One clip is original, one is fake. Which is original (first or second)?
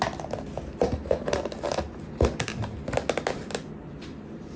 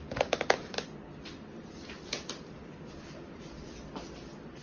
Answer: first